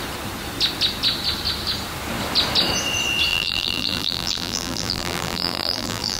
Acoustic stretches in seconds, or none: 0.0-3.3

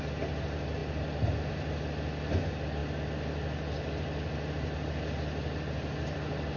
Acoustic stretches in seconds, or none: 0.0-6.6

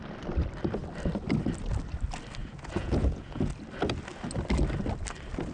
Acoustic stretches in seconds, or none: 0.0-2.4; 3.5-5.5

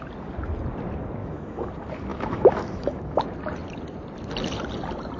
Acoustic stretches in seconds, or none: 0.0-1.2; 1.7-2.1; 3.2-5.2